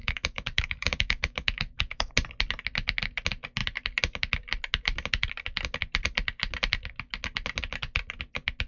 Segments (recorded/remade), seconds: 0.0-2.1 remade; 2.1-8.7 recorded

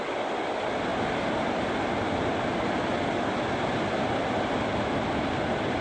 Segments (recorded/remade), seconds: 0.0-5.8 recorded

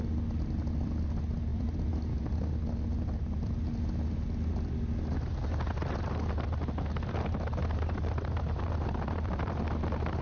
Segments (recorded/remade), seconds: 0.0-1.5 recorded; 1.5-2.3 remade; 2.3-7.6 recorded; 7.6-9.6 remade; 9.6-10.2 recorded

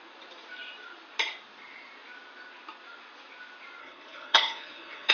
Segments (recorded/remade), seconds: 0.0-3.8 recorded; 3.8-5.1 remade

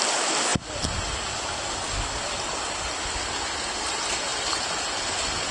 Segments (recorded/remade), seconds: 0.0-5.5 recorded

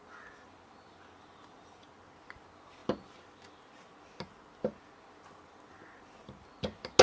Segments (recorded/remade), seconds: 0.0-7.0 recorded

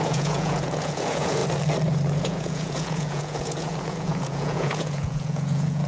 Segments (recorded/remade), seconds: 0.0-1.4 remade; 1.4-2.2 recorded; 2.2-5.9 remade

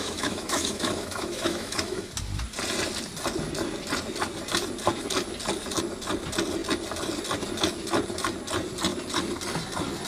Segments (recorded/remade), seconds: 0.0-2.1 remade; 2.1-10.1 recorded